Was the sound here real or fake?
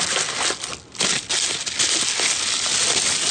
real